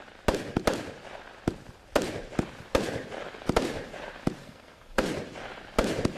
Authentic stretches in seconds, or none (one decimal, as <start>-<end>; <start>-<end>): 0.0-4.4; 5.0-6.2